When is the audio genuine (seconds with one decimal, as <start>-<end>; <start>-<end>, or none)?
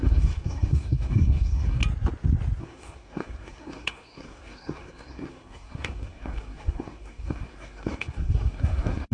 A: 1.8-2.6